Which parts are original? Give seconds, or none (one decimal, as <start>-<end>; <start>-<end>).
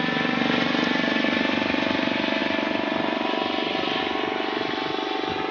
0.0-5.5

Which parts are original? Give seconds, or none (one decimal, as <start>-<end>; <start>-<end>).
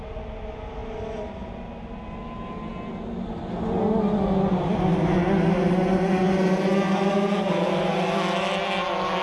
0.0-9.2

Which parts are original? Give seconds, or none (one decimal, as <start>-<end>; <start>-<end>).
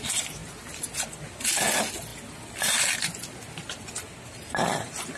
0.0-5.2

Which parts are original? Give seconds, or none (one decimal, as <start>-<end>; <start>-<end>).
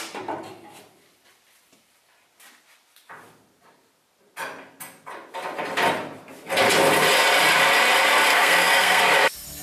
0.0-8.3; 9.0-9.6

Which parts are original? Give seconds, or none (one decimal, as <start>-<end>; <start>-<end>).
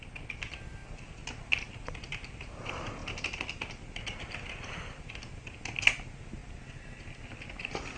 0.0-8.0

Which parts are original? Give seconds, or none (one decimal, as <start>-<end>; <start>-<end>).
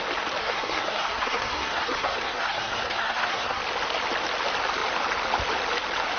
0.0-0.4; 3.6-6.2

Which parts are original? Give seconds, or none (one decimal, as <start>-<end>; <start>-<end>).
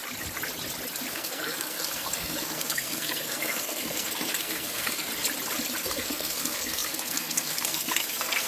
0.0-1.1; 5.1-5.8